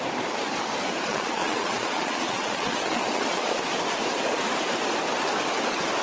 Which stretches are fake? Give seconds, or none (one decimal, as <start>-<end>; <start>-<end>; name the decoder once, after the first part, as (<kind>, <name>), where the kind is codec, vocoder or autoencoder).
1.1-3.6 (vocoder, Vocos)